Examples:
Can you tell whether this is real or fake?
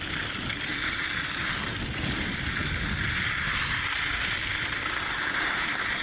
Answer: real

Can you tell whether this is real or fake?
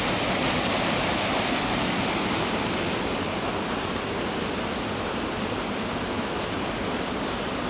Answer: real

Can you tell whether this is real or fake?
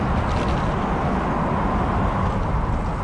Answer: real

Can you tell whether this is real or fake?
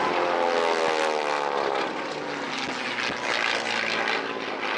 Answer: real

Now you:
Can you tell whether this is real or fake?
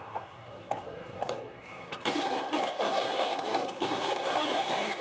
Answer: fake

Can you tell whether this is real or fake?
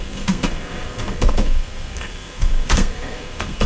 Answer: fake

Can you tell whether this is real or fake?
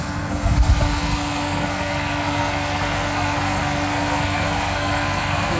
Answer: fake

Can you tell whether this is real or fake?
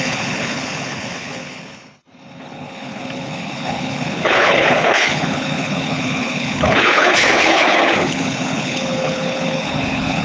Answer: fake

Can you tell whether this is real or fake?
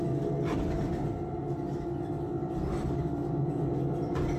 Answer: real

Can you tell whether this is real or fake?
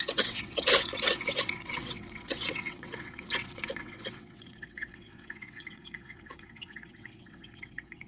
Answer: fake